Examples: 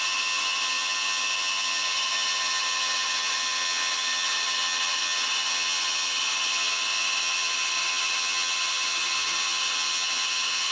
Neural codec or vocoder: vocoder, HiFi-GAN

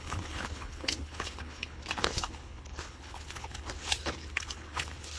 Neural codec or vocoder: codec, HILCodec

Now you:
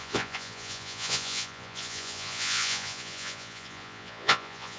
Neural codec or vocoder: vocoder, Vocos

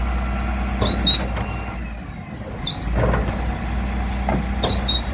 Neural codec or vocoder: none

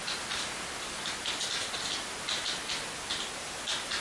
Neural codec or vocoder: none